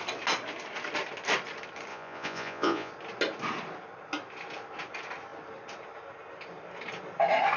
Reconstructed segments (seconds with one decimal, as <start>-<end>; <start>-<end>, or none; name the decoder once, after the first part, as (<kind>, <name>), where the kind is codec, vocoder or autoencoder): 1.9-2.9 (vocoder, Vocos)